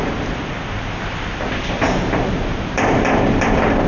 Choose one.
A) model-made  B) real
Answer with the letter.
B